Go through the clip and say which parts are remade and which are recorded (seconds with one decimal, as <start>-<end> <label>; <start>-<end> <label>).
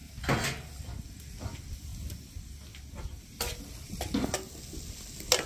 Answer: 0.0-1.4 recorded; 1.4-1.9 remade; 1.9-5.5 recorded